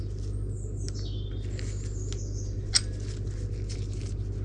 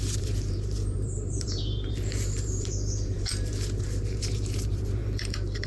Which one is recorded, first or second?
first